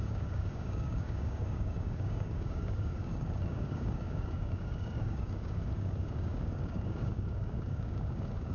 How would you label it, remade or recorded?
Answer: remade